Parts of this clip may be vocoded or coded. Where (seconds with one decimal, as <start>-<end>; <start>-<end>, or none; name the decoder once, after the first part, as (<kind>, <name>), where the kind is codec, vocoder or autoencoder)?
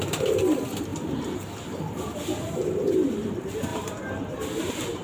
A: none